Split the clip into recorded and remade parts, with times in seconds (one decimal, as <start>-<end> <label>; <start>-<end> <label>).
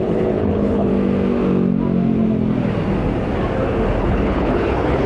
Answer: 0.0-0.9 remade; 0.9-4.0 recorded; 4.0-5.1 remade